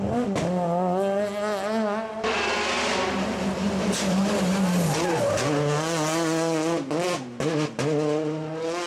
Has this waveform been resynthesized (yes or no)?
no